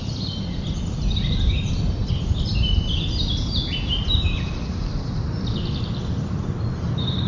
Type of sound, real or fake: real